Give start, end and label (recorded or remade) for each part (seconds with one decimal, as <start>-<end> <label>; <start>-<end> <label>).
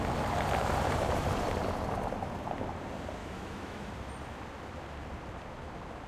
0.0-3.2 recorded; 3.2-3.9 remade; 3.9-6.1 recorded